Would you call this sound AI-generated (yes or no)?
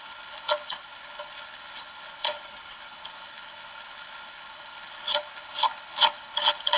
yes